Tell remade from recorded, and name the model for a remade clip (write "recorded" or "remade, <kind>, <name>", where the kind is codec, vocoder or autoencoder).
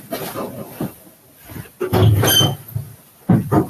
recorded